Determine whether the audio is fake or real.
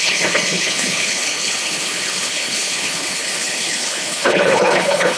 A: fake